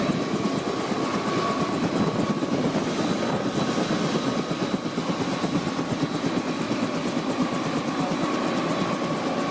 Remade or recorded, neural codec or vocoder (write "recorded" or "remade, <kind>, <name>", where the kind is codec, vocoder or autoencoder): recorded